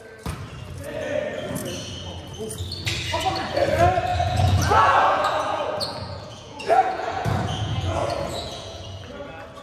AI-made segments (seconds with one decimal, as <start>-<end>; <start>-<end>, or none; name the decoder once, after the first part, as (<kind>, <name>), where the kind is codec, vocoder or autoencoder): 4.1-9.1 (vocoder, Vocos)